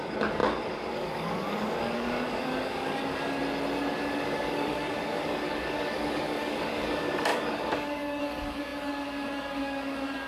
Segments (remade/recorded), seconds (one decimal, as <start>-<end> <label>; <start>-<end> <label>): 0.0-3.4 remade; 3.4-3.9 recorded; 3.9-10.3 remade